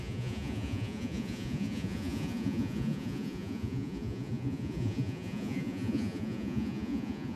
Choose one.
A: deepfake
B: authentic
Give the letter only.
A